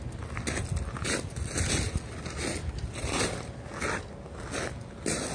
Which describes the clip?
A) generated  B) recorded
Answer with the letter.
B